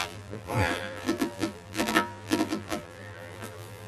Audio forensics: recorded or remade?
remade